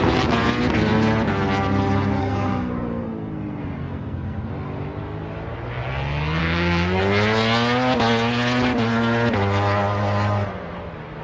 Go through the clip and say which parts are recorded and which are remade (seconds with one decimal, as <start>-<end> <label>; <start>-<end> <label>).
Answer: 0.0-2.2 recorded; 2.2-4.5 remade; 4.5-6.4 recorded; 6.4-7.0 remade; 7.0-11.2 recorded